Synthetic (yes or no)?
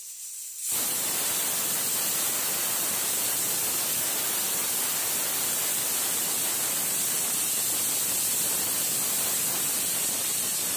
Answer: no